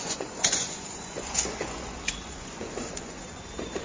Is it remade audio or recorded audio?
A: remade